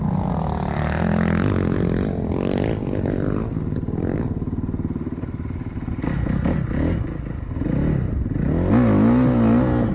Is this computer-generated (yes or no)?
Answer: no